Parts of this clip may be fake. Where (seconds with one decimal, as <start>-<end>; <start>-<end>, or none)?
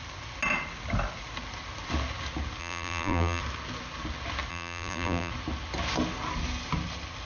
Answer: 2.6-3.4; 4.5-5.3